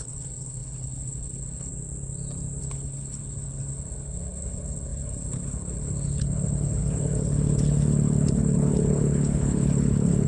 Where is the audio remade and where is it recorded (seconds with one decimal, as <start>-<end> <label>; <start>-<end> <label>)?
0.0-1.7 remade; 1.7-2.6 recorded; 2.6-10.3 remade